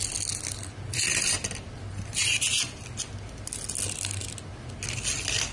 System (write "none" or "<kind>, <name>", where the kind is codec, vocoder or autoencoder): none